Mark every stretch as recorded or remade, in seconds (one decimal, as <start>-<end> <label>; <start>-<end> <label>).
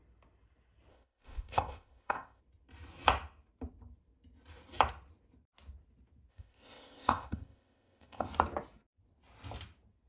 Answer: 0.0-0.9 recorded; 0.9-2.4 remade; 2.4-6.3 recorded; 6.3-8.3 remade; 8.3-10.1 recorded